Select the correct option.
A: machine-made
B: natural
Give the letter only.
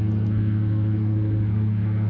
A